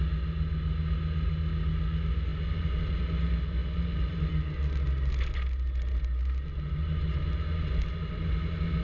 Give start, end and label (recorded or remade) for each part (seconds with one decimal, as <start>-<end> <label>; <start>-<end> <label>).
0.0-8.8 recorded